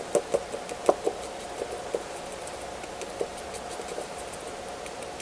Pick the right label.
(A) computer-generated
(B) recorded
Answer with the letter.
B